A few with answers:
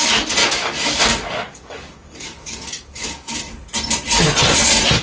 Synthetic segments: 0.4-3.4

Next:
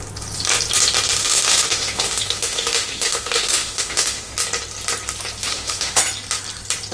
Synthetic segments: 1.2-4.3; 5.4-6.0

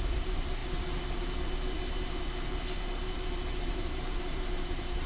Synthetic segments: 0.0-0.6; 3.7-5.1

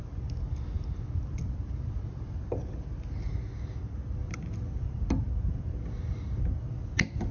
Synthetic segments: none

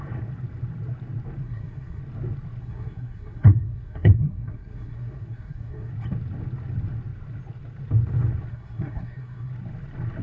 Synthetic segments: 1.4-2.0; 2.6-5.9; 8.5-9.5

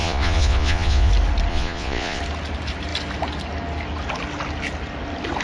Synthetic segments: 0.0-1.1; 1.5-2.2